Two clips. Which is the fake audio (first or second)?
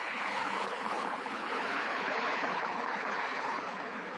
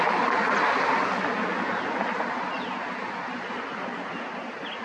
first